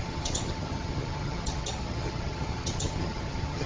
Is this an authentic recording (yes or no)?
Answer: no